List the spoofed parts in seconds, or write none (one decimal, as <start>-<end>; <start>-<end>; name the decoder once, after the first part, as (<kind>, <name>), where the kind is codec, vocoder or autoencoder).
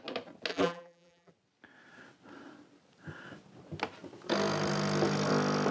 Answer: 0.5-1.3 (vocoder, BigVGAN v2)